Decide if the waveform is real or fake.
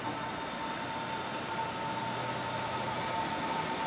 real